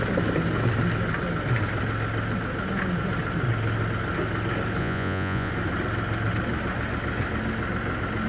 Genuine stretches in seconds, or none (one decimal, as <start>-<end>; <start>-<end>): 0.0-4.8; 5.5-8.3